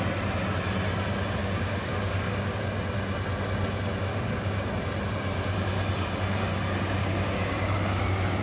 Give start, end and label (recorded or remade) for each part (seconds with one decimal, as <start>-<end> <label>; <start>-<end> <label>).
0.0-1.4 recorded; 1.4-2.6 remade; 2.6-4.1 recorded; 4.1-4.7 remade; 4.7-7.0 recorded; 7.0-8.0 remade; 8.0-8.4 recorded

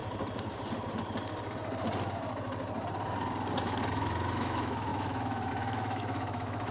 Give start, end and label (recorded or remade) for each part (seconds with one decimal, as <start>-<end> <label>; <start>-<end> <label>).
0.0-3.9 recorded; 3.9-6.7 remade